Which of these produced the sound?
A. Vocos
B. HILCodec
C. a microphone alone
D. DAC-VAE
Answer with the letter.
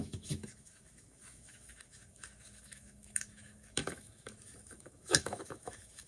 D